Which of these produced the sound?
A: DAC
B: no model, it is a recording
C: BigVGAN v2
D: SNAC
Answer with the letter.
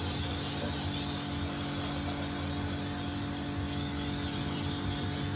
B